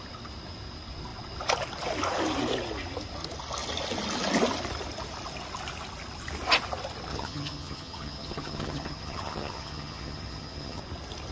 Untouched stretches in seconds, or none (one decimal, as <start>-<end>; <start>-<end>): 0.0-7.1; 10.8-11.3